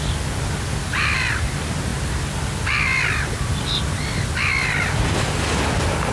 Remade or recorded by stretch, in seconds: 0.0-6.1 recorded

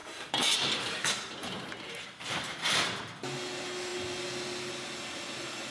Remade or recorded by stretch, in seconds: 0.0-2.8 remade; 2.8-5.7 recorded

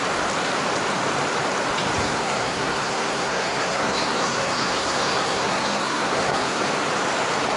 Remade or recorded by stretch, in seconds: 0.0-2.0 recorded; 2.0-6.6 remade; 6.6-7.6 recorded

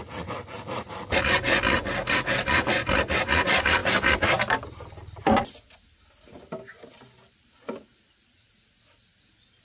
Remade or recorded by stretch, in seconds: 0.0-9.6 recorded